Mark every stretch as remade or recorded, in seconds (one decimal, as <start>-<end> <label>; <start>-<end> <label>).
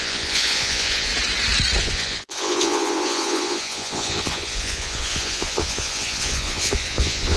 0.0-1.1 remade; 1.1-1.8 recorded; 1.8-7.4 remade